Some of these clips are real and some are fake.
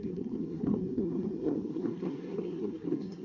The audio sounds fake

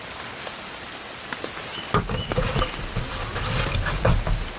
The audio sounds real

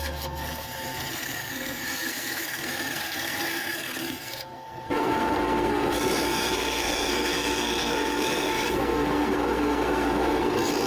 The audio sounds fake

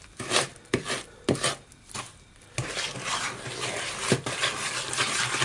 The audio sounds real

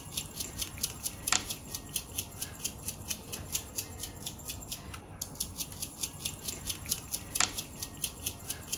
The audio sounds real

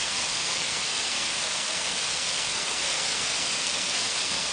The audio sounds fake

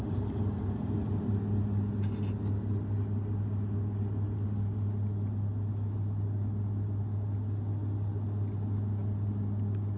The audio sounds real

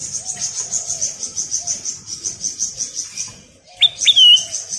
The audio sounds real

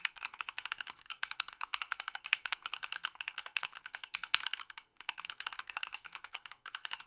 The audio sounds fake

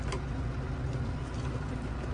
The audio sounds real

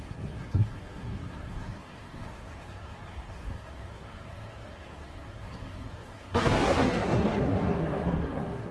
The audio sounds fake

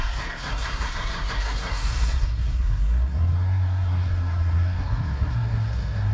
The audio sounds fake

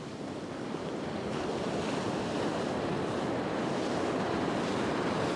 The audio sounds real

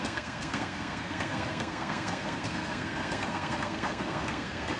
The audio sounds fake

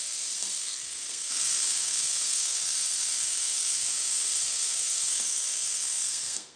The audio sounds fake